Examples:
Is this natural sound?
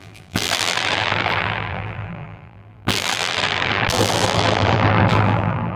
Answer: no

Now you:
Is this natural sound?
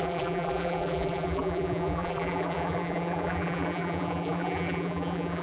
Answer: no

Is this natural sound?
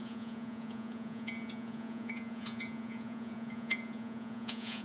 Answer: no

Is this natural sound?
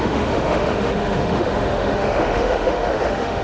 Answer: no